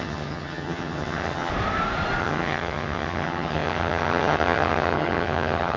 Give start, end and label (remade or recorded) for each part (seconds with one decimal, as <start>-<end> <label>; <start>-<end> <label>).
0.0-1.5 remade; 1.5-2.2 recorded; 2.2-5.8 remade